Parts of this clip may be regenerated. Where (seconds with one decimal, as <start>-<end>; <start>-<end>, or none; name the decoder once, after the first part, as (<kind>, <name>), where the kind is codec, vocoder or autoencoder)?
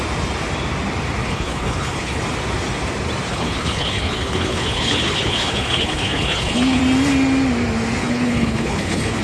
1.2-2.2 (codec, HILCodec); 3.3-6.8; 8.0-9.2